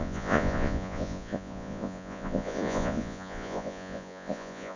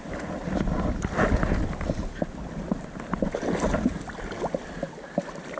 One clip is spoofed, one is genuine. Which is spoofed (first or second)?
first